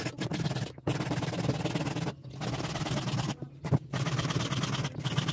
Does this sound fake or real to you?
real